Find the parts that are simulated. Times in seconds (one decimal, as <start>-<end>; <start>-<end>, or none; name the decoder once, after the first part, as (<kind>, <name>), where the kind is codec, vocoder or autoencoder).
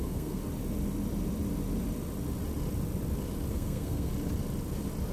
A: 0.0-0.4 (codec, SNAC); 3.5-4.1